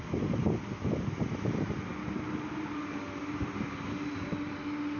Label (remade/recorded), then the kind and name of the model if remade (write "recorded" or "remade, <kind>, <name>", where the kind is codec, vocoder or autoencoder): recorded